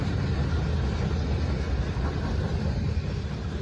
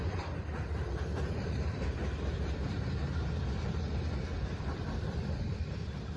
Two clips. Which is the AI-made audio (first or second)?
second